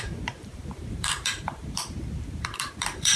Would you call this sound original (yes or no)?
no